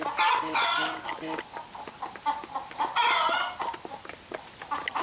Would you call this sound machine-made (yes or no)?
no